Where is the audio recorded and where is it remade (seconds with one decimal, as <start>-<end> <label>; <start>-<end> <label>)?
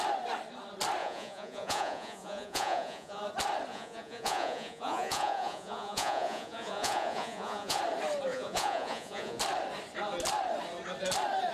0.0-1.0 recorded; 1.0-3.2 remade; 3.2-3.7 recorded; 3.7-7.8 remade; 7.8-8.3 recorded; 8.3-9.4 remade; 9.4-11.5 recorded